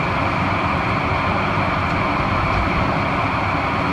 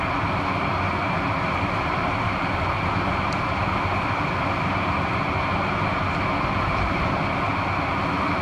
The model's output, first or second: first